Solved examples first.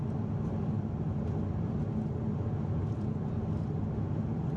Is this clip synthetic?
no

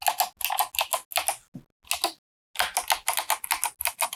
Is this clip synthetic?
no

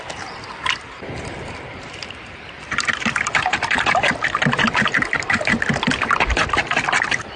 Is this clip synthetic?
yes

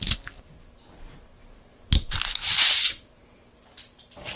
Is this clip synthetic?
no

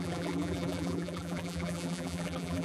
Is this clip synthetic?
yes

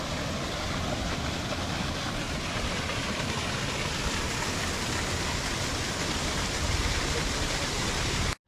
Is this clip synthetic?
no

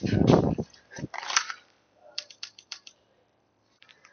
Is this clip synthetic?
yes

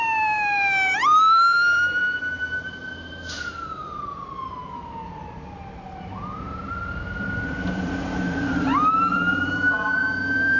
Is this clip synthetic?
yes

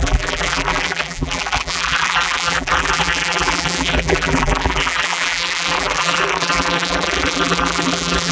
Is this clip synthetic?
yes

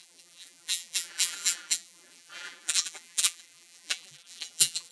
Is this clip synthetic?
yes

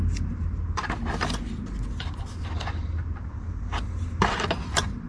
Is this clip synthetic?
no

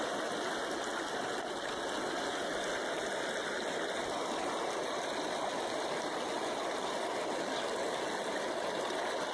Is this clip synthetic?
no